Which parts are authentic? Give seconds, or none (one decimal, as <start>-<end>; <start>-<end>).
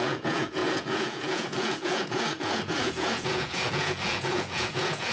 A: none